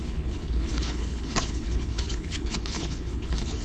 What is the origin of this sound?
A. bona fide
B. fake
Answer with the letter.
B